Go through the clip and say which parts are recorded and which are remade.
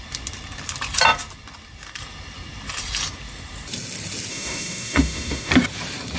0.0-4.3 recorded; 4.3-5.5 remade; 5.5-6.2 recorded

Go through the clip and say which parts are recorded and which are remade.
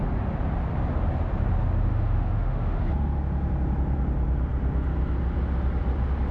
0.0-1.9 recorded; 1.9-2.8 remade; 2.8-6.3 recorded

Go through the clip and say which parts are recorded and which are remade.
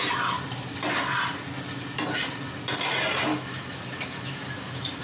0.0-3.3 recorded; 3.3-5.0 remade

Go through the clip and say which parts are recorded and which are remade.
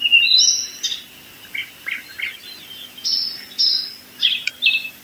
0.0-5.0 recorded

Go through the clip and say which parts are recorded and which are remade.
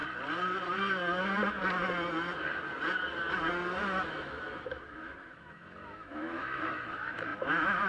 0.0-4.0 recorded; 4.0-7.9 remade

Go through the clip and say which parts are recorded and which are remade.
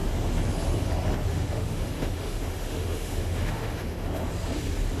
0.0-1.3 recorded; 1.3-4.3 remade; 4.3-5.0 recorded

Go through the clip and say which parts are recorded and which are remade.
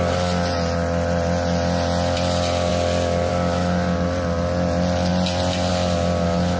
0.0-6.6 recorded